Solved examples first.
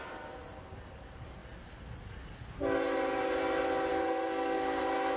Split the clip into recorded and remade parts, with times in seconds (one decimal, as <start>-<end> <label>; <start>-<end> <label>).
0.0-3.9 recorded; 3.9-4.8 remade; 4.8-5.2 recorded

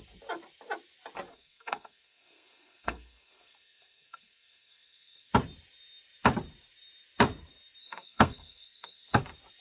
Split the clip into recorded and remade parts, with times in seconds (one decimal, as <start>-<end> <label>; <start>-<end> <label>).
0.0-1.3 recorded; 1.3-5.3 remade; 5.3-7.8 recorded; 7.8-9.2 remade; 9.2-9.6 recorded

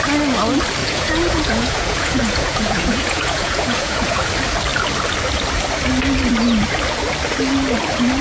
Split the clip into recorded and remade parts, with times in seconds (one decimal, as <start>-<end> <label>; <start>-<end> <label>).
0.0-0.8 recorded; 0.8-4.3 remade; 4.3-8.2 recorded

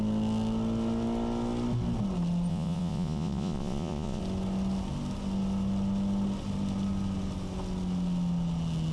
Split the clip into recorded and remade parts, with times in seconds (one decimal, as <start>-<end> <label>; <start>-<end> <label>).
0.0-2.5 recorded; 2.5-4.2 remade; 4.2-8.9 recorded

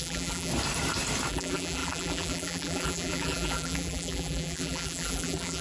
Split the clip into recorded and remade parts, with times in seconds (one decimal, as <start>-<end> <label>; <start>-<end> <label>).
0.0-0.5 remade; 0.5-1.3 recorded; 1.3-5.6 remade

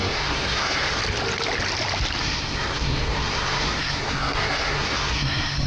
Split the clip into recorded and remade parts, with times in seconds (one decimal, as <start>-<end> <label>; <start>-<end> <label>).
0.0-1.0 remade; 1.0-2.2 recorded; 2.2-5.7 remade